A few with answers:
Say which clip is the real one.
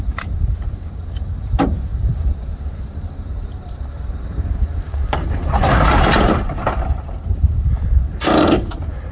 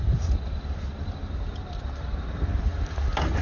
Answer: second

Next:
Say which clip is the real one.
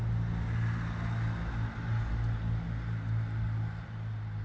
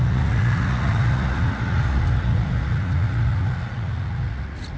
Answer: first